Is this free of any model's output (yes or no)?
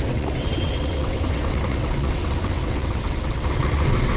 no